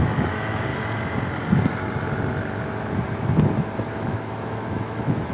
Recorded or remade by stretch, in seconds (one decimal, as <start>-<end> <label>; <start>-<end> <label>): 0.0-0.7 remade; 0.7-3.9 recorded; 3.9-5.3 remade